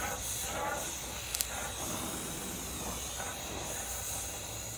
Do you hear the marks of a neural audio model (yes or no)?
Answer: no